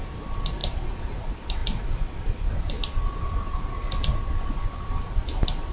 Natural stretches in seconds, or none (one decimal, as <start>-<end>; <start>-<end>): 0.0-5.7